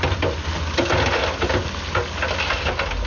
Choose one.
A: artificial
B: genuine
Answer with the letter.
B